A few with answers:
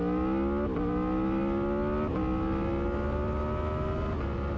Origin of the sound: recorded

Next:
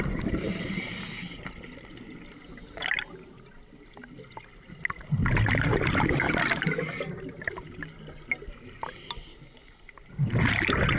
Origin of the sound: recorded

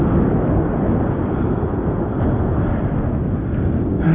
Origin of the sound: recorded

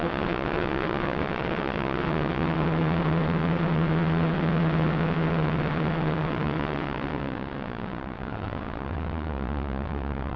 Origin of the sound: remade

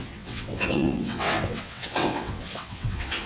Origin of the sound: remade